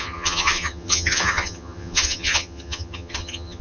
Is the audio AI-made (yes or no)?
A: yes